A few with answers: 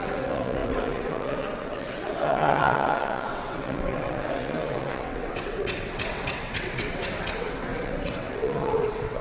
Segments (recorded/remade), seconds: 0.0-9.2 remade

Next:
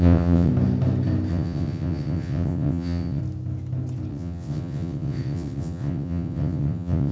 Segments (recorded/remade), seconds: 0.0-0.5 remade; 0.5-1.3 recorded; 1.3-3.2 remade; 3.2-4.1 recorded; 4.1-7.1 remade